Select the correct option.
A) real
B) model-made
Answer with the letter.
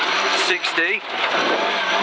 B